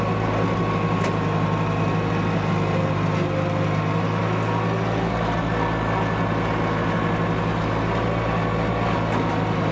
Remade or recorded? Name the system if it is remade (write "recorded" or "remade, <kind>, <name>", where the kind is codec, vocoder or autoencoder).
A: recorded